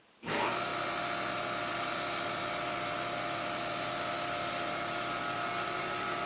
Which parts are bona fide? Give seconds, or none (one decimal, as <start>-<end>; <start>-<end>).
0.0-6.3